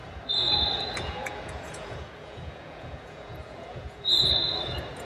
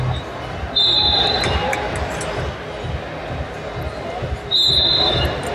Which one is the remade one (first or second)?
first